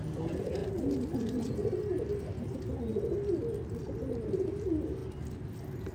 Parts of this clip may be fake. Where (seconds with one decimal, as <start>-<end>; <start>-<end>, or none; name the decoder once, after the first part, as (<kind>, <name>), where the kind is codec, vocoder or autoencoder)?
none